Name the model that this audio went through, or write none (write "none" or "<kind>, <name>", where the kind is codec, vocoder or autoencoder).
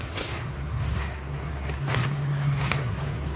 codec, SNAC